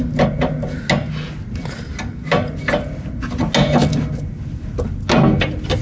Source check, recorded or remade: recorded